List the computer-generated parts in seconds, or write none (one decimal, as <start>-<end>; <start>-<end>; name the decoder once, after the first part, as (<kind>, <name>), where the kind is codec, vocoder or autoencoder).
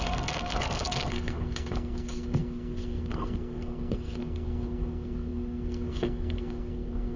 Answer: 0.0-7.2 (codec, SNAC)